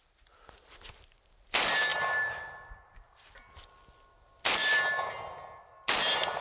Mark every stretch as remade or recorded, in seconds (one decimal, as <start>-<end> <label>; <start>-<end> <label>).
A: 0.0-6.4 recorded